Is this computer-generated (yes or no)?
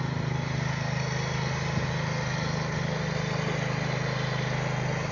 no